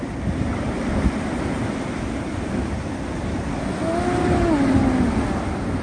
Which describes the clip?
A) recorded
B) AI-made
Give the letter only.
A